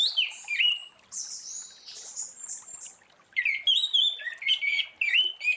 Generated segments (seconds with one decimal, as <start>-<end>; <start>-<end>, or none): none